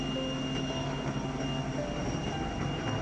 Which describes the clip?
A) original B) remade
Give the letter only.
A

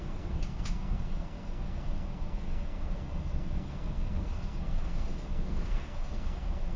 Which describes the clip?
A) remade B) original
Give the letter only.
A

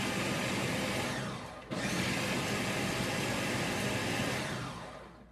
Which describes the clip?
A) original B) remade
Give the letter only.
A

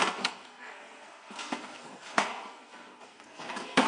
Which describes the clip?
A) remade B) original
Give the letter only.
A